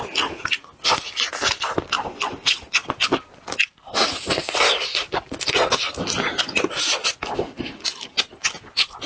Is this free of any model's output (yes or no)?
yes